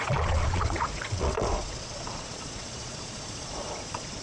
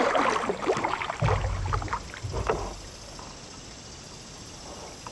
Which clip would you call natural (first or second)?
second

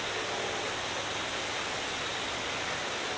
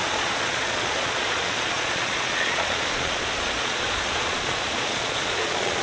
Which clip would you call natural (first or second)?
first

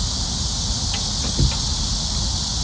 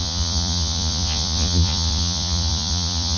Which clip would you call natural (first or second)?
first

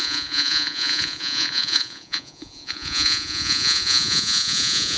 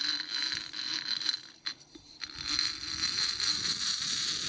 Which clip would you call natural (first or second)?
second